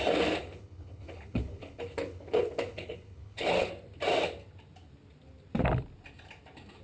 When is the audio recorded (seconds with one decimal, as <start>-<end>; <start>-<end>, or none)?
0.0-0.4; 3.7-6.8